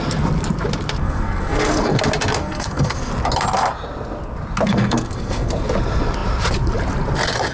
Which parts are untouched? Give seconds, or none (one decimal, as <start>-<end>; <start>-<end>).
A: 0.0-1.0; 2.0-2.4; 3.1-4.7; 5.5-7.5